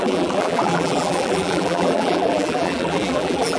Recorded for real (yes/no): no